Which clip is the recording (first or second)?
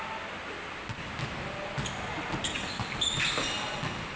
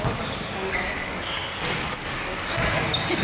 first